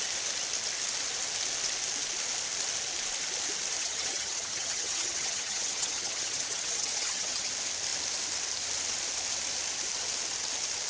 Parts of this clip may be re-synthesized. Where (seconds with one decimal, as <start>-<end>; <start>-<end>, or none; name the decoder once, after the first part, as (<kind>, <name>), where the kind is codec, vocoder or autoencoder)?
3.8-7.5 (vocoder, HiFi-GAN)